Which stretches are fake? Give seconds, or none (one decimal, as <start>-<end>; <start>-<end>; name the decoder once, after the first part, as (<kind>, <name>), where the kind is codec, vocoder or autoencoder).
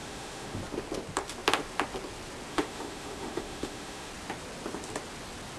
0.0-0.6 (autoencoder, DAC-VAE); 2.5-4.1